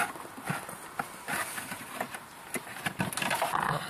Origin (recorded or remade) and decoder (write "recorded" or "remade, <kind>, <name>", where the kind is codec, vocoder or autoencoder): recorded